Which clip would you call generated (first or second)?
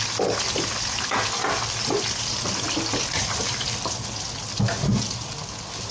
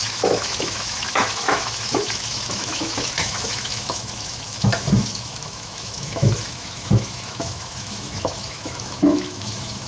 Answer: second